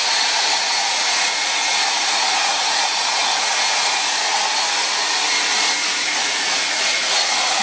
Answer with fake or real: fake